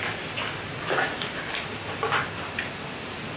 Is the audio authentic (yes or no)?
yes